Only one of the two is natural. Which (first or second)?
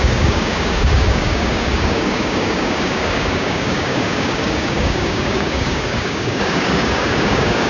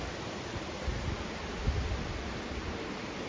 second